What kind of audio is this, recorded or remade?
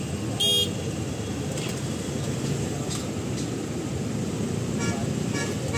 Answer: recorded